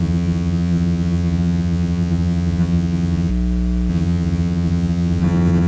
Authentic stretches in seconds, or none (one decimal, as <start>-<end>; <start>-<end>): 3.3-3.9